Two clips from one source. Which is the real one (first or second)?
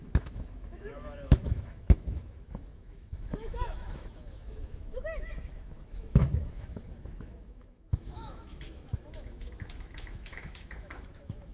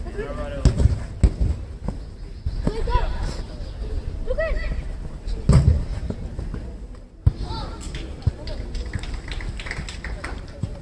second